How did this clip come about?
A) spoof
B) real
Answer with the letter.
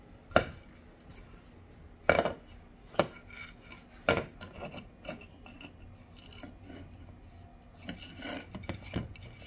B